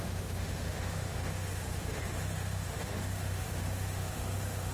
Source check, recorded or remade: remade